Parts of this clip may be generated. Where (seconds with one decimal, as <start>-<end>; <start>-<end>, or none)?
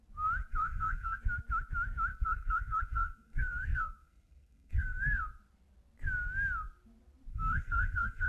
0.5-1.2; 2.1-5.2; 7.3-8.3